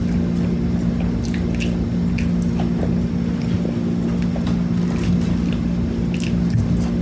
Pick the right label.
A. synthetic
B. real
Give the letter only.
B